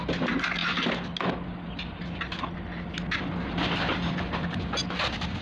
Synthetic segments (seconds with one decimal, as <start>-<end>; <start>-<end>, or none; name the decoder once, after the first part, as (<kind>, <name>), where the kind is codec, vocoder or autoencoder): none